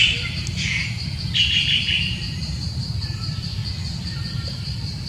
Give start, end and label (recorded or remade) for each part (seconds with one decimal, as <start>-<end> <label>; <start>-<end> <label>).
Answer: 0.0-3.6 remade; 3.6-4.1 recorded; 4.1-5.1 remade